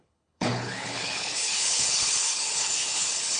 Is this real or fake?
fake